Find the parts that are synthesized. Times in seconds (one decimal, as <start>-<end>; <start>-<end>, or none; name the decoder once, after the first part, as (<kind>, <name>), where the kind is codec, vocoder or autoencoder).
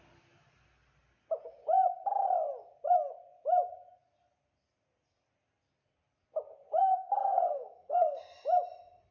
6.8-8.2 (codec, SNAC)